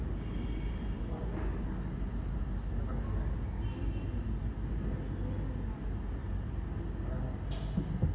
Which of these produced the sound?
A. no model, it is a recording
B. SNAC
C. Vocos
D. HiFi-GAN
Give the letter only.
A